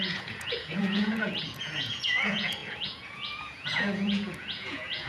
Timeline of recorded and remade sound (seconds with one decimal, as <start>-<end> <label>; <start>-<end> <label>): 0.0-5.1 remade